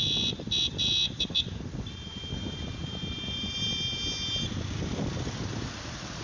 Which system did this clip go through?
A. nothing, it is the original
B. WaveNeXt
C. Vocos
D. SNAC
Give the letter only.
A